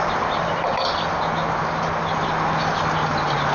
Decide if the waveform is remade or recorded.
recorded